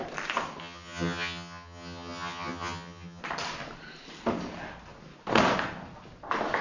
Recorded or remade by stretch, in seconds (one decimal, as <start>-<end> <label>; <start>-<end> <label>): 0.0-0.6 recorded; 0.6-3.2 remade; 3.2-6.6 recorded